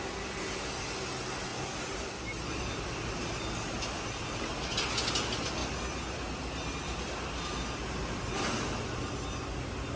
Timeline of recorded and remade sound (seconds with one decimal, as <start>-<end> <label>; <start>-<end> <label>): 0.0-1.5 recorded; 1.5-4.4 remade; 4.4-10.0 recorded